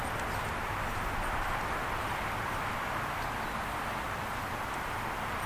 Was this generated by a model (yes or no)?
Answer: no